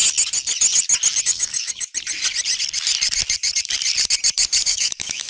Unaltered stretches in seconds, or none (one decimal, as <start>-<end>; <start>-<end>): 0.0-1.2; 1.9-4.7